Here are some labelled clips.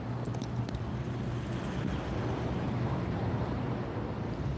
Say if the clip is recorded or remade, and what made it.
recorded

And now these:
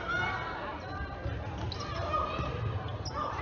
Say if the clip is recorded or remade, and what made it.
recorded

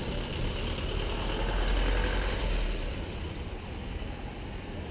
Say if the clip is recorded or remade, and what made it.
recorded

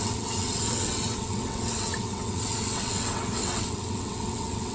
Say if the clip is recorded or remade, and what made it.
remade, vocoder, WaveNeXt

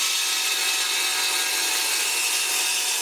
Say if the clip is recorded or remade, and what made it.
recorded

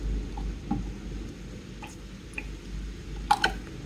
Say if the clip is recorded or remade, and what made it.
recorded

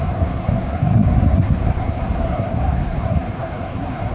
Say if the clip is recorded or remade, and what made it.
remade, codec, SNAC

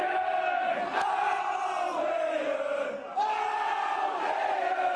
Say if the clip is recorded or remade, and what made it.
recorded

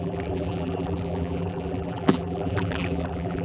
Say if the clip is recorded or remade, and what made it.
remade, vocoder, BigVGAN v2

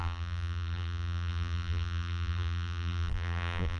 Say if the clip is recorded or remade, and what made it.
remade, vocoder, BigVGAN v2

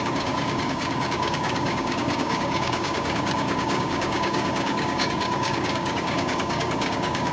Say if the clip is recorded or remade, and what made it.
remade, codec, DAC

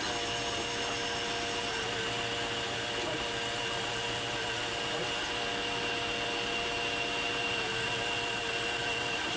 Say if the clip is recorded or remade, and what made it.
recorded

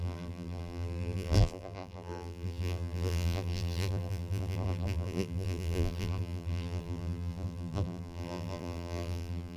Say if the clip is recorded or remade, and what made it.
remade, vocoder, BigVGAN v2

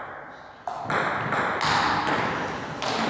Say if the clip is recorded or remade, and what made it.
recorded